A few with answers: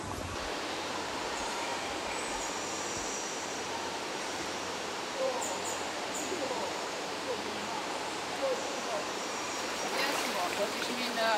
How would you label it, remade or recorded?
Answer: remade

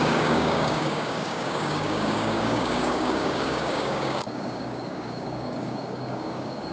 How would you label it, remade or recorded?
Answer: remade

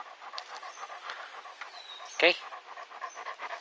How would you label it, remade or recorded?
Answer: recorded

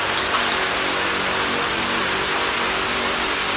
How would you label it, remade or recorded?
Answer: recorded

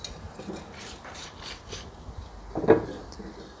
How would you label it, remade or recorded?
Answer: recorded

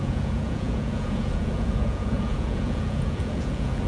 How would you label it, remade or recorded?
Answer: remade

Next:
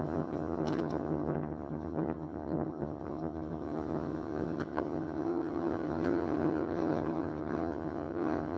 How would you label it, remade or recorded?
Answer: remade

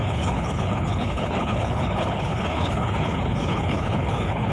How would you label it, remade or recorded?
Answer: remade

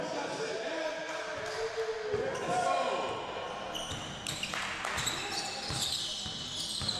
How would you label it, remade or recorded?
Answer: recorded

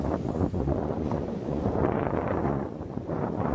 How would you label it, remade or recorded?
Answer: remade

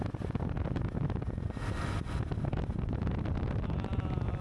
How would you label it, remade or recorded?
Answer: recorded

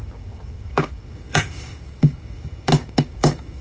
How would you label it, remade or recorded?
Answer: remade